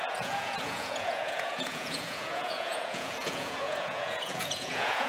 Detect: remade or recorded remade